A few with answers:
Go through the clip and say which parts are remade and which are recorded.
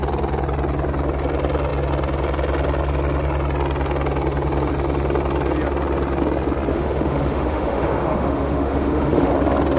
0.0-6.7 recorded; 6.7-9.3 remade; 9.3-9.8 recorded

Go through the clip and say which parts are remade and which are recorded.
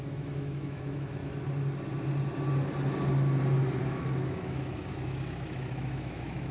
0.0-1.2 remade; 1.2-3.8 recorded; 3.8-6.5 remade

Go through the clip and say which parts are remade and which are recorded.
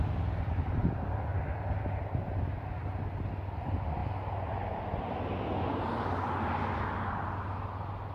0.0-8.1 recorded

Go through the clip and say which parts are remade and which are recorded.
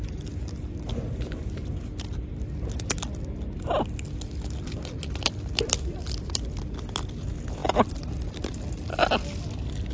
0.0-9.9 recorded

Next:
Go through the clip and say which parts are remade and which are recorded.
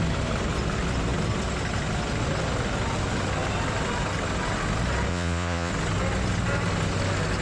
0.0-5.1 recorded; 5.1-5.7 remade; 5.7-7.4 recorded